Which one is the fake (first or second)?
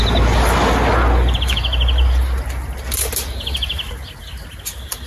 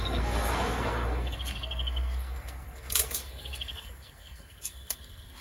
second